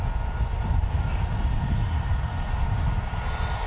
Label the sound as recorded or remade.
recorded